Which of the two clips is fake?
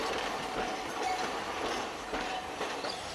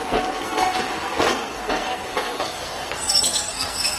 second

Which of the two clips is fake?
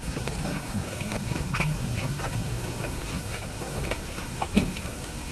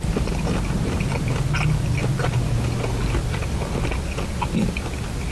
first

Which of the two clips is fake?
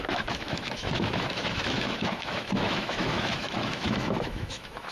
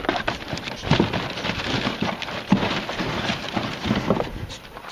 first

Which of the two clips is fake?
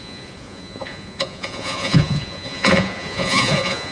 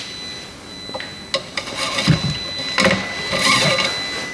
first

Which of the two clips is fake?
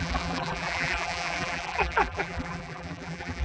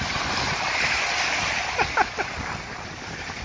first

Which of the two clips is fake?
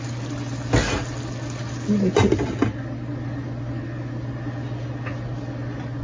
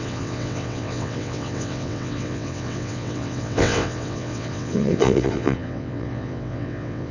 second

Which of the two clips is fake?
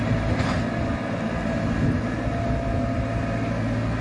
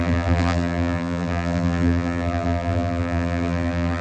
second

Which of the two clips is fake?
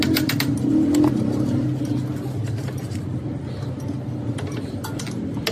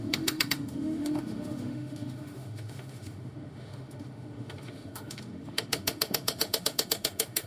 second